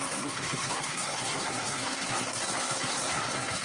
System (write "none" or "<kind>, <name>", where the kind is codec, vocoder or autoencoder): codec, SNAC